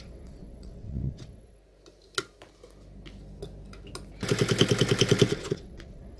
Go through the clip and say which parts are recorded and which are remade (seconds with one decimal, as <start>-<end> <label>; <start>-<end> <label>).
0.0-1.6 remade; 1.6-5.3 recorded; 5.3-6.2 remade